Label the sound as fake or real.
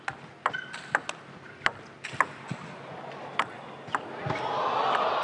real